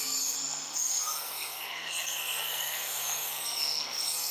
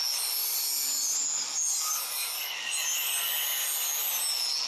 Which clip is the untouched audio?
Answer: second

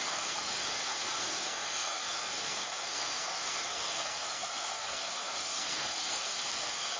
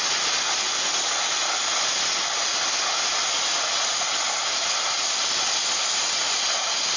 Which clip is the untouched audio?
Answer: second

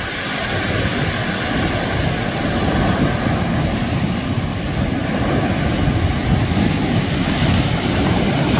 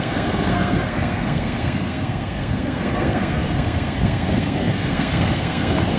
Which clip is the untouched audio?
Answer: first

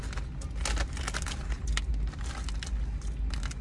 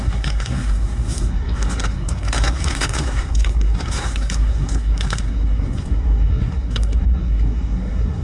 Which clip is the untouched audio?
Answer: first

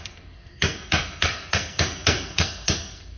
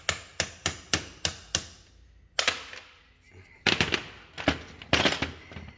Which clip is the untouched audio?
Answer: second